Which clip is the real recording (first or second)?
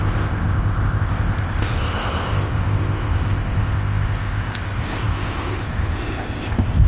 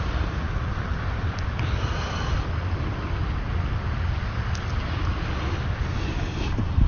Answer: second